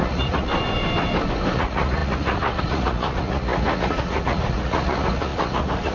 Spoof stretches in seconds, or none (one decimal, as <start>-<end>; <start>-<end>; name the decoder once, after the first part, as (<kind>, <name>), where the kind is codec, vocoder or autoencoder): 0.0-0.5 (vocoder, Vocos); 1.5-5.9